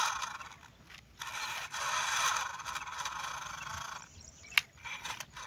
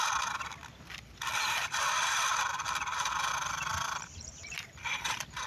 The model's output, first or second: second